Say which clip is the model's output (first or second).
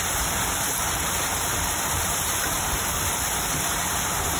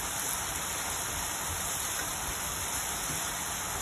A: first